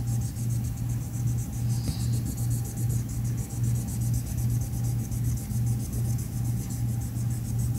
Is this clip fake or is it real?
real